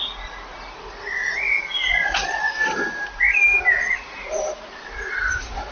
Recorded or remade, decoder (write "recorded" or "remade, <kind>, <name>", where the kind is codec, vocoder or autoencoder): recorded